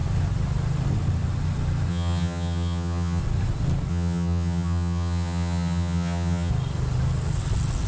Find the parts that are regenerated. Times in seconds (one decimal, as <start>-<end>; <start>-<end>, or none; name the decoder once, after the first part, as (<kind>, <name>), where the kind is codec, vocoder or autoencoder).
1.9-3.2 (vocoder, HiFi-GAN); 3.9-6.5

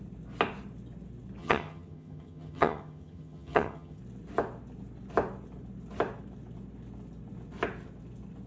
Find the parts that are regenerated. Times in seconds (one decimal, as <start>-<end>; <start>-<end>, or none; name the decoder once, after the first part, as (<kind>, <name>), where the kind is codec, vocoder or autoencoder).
1.4-4.0 (vocoder, HiFi-GAN)

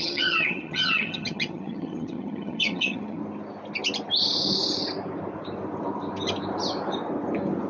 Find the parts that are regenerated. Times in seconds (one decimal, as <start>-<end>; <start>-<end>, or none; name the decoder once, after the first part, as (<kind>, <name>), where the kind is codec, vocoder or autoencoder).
0.0-3.2 (vocoder, HiFi-GAN)